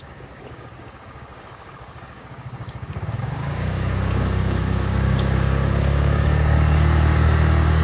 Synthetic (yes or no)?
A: yes